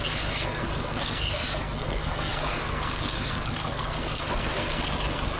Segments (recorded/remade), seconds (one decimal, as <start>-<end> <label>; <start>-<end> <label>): 0.0-5.4 remade